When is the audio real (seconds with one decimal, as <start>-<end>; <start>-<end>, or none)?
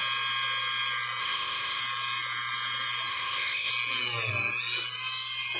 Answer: 0.0-1.2; 1.8-3.1; 3.7-5.6